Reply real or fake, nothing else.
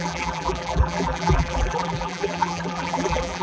fake